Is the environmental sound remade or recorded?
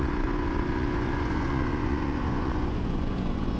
remade